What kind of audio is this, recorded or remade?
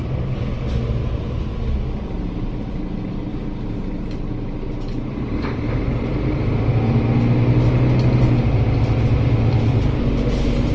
recorded